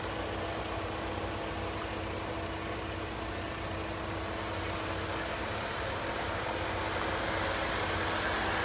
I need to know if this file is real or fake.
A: real